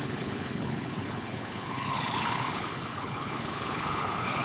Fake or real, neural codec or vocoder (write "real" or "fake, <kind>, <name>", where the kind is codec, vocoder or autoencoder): fake, codec, HILCodec